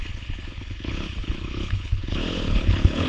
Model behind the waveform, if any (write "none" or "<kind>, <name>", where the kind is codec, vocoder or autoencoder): codec, HILCodec